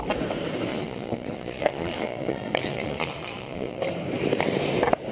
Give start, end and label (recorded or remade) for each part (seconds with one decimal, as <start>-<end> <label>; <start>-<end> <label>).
0.0-0.7 recorded; 0.7-3.8 remade; 3.8-5.1 recorded